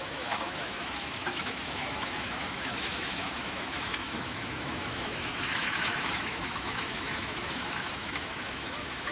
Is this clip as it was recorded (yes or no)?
no